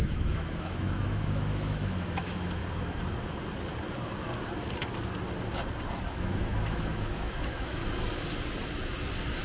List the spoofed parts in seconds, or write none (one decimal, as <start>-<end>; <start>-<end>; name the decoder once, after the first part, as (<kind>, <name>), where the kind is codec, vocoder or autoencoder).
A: 0.0-2.6 (autoencoder, DAC-VAE); 6.1-7.8